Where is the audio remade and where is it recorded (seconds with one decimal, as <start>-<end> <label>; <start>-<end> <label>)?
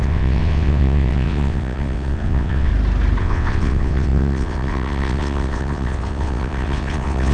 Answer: 0.0-2.7 remade; 2.7-3.2 recorded; 3.2-7.3 remade